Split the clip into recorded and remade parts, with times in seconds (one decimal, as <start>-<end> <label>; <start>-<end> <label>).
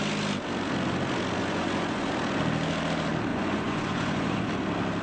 0.0-1.4 recorded; 1.4-2.1 remade; 2.1-3.3 recorded; 3.3-4.5 remade; 4.5-5.0 recorded